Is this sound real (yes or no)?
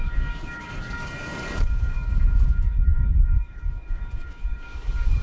no